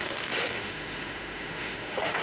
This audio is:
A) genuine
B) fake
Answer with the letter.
B